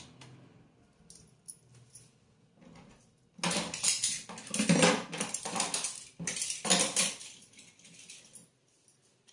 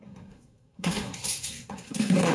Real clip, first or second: first